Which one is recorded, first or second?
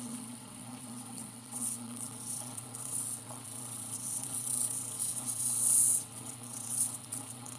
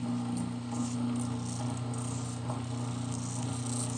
second